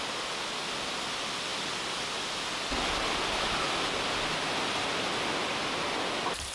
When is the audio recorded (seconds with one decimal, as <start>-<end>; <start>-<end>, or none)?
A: 0.0-6.5